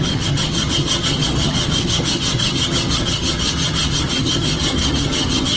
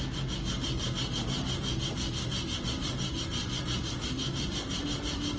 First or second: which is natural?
second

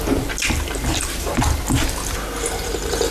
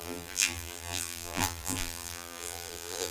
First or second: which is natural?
first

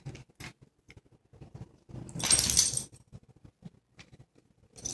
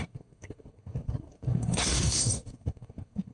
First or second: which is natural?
first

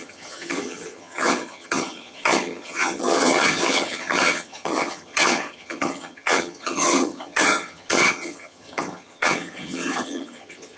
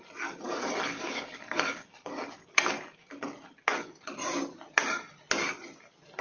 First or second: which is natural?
second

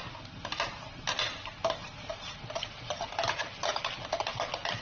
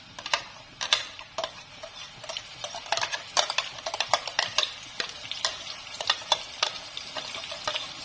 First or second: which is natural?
first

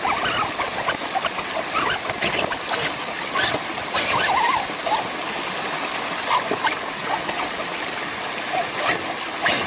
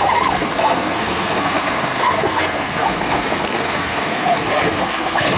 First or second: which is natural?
first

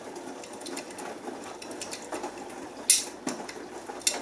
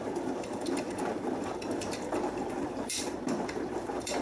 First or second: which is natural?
first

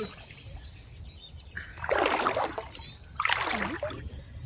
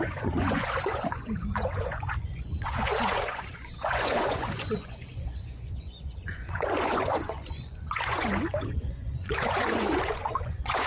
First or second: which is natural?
first